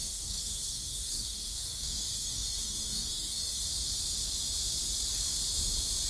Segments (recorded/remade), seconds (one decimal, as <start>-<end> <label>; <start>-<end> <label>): 0.0-3.7 remade; 3.7-6.1 recorded